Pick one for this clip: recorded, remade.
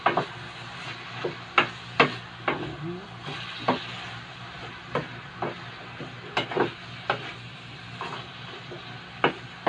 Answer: recorded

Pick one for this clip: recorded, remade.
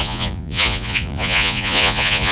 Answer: remade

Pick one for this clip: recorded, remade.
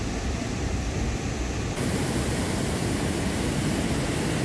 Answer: recorded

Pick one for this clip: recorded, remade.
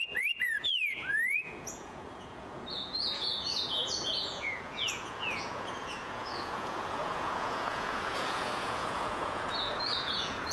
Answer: remade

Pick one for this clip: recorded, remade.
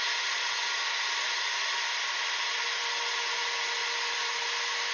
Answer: recorded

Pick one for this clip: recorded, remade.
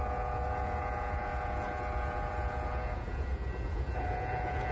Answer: remade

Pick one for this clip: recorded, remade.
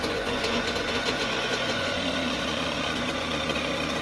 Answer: remade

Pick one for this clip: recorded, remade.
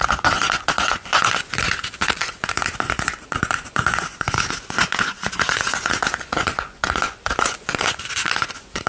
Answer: remade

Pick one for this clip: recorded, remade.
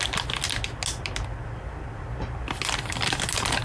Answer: recorded